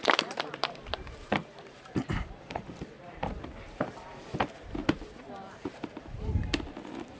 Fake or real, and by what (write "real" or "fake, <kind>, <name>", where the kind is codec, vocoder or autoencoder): fake, vocoder, BigVGAN v2